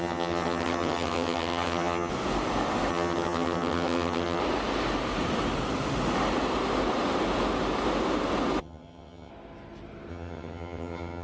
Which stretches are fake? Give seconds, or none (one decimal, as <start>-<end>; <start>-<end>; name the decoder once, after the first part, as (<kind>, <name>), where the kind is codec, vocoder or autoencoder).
0.0-2.1 (vocoder, HiFi-GAN); 2.9-4.4; 8.6-9.3; 10.1-11.2